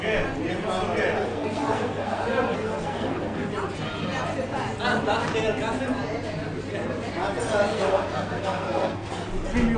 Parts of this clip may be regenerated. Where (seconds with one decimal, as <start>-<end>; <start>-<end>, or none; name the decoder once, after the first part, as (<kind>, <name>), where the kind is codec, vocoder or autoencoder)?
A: 1.3-3.5 (codec, SNAC); 7.7-9.1